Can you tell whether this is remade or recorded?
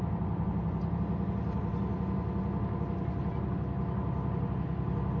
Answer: recorded